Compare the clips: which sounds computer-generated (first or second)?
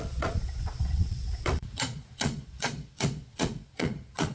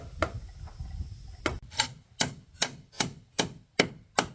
first